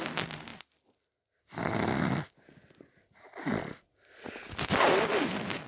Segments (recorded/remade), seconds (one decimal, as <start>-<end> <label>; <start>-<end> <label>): 0.0-5.7 recorded